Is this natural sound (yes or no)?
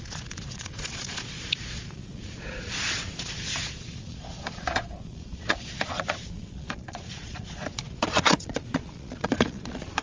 no